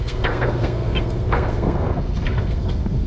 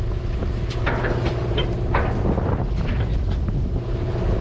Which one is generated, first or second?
first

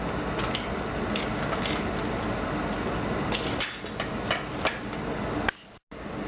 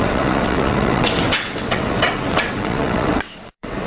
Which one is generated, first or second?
second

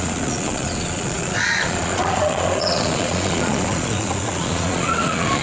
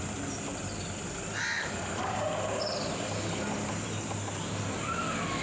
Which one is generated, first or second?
first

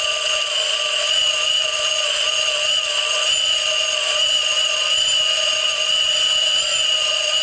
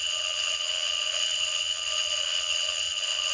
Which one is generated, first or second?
second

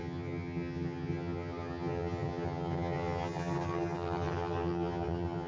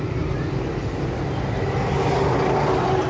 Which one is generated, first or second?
first